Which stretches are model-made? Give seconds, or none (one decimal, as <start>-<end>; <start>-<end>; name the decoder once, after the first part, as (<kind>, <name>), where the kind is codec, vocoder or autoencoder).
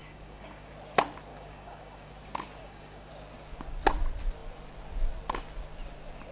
0.0-0.7 (codec, DAC); 1.3-2.1; 2.6-3.1